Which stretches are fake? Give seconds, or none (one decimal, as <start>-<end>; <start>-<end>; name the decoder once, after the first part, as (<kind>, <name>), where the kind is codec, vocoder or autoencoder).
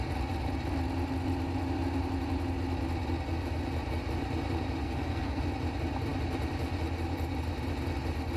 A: 4.8-5.4 (codec, SNAC)